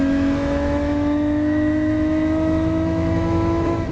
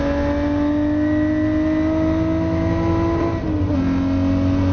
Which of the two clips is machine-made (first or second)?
first